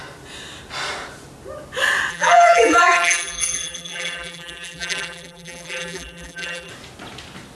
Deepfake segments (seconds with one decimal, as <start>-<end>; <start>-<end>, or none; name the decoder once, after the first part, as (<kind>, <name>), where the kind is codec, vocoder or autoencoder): 2.1-6.7 (vocoder, BigVGAN v2)

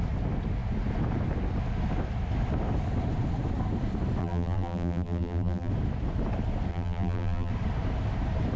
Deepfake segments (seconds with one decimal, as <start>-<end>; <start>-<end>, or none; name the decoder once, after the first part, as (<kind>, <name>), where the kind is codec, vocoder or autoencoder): 4.2-5.7 (vocoder, BigVGAN v2); 6.7-7.5

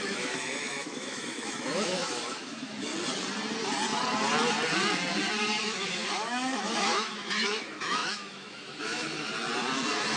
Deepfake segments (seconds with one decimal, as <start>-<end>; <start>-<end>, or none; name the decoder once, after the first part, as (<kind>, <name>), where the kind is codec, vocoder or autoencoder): 0.0-2.9 (autoencoder, DAC-VAE); 5.6-9.3

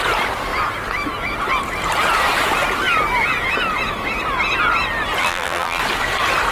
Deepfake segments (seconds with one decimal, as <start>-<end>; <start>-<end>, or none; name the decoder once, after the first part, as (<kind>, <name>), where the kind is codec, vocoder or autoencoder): 5.2-5.8 (vocoder, BigVGAN v2)